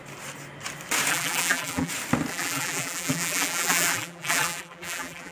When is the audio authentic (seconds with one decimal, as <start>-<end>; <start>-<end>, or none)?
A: 0.0-1.1; 1.9-2.3